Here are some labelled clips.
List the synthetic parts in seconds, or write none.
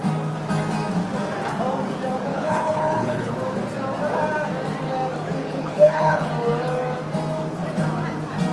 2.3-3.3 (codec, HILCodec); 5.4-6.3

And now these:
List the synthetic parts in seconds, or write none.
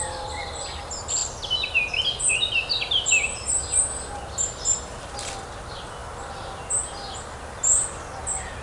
none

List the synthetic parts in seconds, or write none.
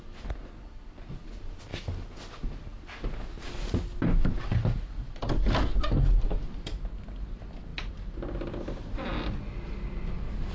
none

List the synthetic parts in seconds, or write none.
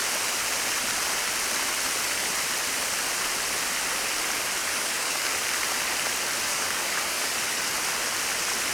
4.6-5.3 (codec, DAC); 6.5-7.6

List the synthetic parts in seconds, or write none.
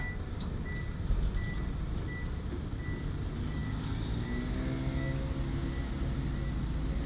none